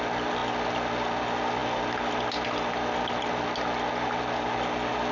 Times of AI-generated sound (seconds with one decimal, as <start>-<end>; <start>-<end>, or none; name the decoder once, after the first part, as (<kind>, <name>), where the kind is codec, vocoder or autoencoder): none